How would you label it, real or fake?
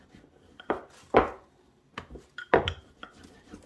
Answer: real